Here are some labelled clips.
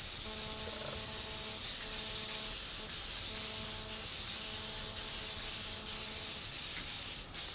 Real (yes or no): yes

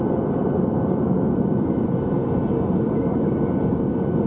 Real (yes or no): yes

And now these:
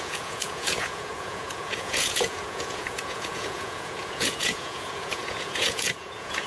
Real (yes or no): no